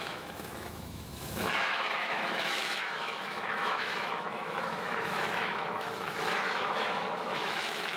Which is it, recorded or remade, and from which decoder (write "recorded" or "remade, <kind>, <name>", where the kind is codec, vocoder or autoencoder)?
remade, autoencoder, DAC-VAE